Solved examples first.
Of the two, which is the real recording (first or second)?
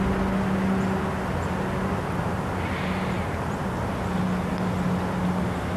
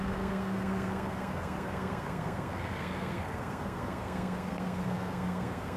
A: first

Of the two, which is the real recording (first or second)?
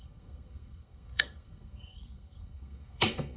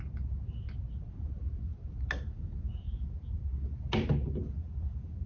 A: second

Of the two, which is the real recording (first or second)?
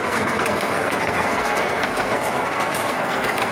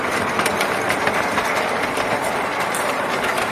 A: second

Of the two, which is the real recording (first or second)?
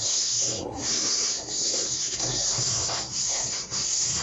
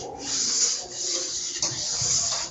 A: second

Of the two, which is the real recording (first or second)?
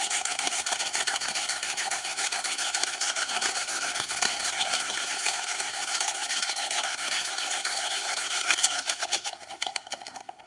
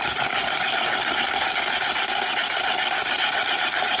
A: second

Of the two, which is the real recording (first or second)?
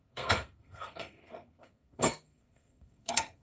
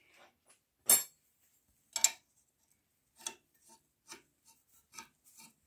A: second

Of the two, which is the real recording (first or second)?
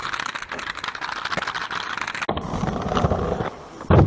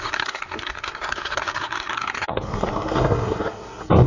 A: first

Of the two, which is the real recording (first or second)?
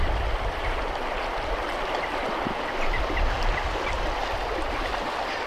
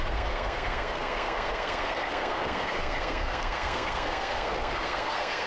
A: first